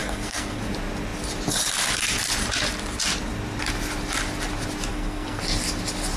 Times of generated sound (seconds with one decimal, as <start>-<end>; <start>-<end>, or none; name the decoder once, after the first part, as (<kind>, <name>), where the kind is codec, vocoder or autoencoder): 0.0-0.6 (codec, SNAC); 4.9-5.4